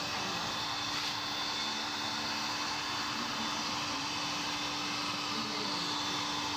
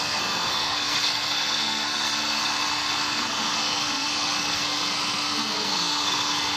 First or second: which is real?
first